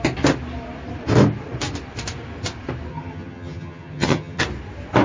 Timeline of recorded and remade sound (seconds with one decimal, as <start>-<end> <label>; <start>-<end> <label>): 0.0-2.9 recorded; 2.9-4.4 remade; 4.4-5.0 recorded